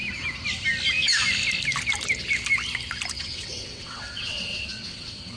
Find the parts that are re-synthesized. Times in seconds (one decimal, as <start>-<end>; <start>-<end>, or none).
3.2-5.4